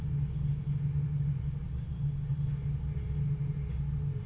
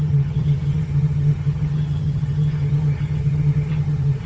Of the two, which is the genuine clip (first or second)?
first